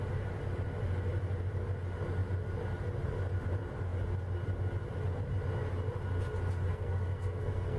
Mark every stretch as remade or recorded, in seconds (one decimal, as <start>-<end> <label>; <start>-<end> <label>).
0.0-6.7 recorded; 6.7-7.8 remade